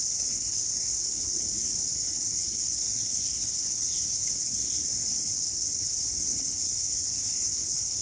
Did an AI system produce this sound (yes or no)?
yes